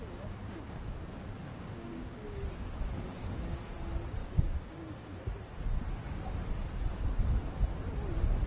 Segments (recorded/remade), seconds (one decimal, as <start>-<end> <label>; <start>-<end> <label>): 0.0-1.5 recorded; 1.5-3.6 remade; 3.6-4.2 recorded; 4.2-5.2 remade; 5.2-8.5 recorded